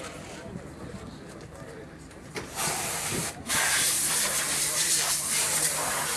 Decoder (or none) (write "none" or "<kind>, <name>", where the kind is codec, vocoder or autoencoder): vocoder, BigVGAN v2